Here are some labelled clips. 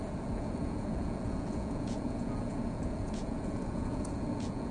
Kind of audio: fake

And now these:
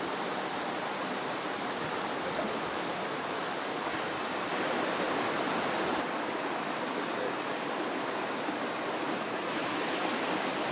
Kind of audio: real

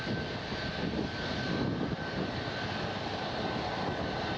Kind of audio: real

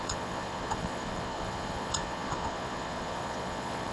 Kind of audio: fake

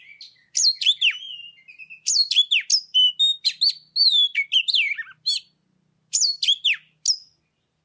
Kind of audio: real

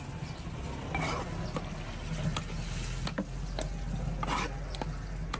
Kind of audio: real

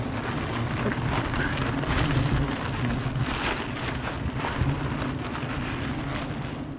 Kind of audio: real